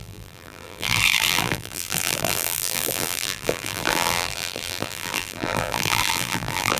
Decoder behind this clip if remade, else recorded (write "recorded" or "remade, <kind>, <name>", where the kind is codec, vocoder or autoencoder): remade, vocoder, BigVGAN v2